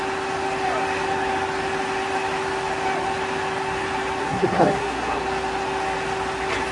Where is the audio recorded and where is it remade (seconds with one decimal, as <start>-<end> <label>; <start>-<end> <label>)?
0.0-4.2 recorded; 4.2-5.2 remade; 5.2-6.7 recorded